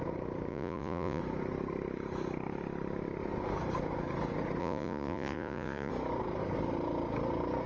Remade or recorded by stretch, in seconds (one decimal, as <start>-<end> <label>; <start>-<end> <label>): 0.0-0.5 recorded; 0.5-1.2 remade; 1.2-4.6 recorded; 4.6-5.9 remade; 5.9-7.7 recorded